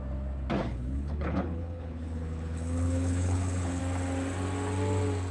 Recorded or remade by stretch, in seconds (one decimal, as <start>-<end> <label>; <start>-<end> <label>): 0.0-0.6 recorded; 0.6-3.8 remade; 3.8-5.3 recorded